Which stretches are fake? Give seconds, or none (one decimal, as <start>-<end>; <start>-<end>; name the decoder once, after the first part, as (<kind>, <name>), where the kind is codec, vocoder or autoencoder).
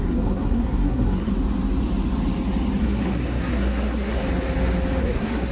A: 0.0-1.3 (codec, SNAC); 2.8-4.2; 5.0-5.5